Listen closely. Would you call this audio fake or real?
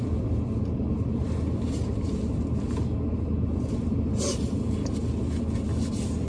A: real